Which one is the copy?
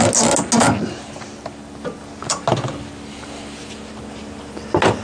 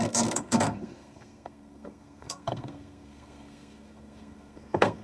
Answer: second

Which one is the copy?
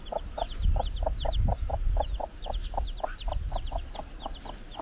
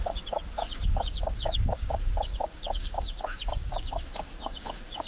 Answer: second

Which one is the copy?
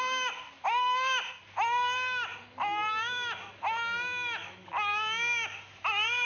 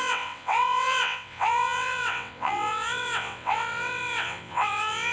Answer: second